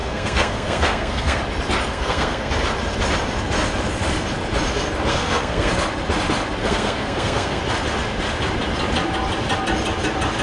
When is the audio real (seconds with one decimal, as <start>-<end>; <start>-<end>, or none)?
1.4-1.9; 2.5-5.1; 5.7-6.6; 7.6-10.4